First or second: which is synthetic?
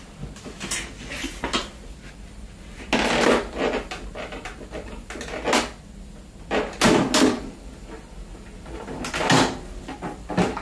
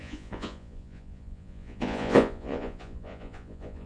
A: second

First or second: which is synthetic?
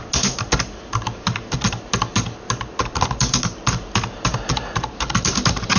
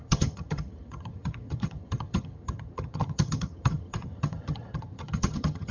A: second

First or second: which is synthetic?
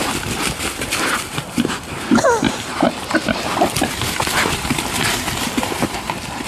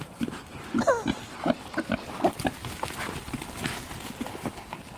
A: first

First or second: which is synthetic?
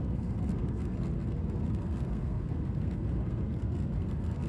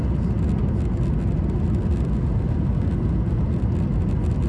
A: first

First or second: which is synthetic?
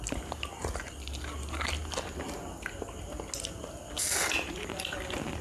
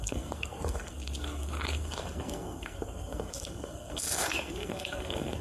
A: second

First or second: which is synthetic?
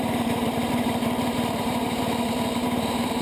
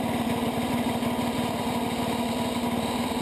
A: first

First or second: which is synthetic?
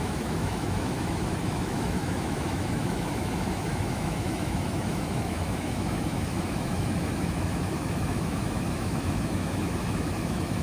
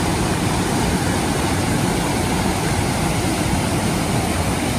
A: first